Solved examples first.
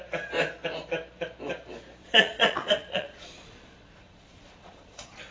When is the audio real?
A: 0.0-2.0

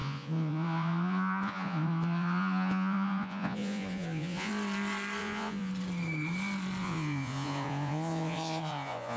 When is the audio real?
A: 4.5-5.2; 5.7-6.8